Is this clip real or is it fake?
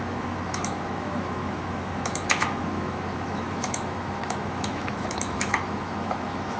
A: fake